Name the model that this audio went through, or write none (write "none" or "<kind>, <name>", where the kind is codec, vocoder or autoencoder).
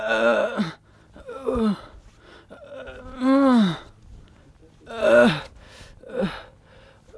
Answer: none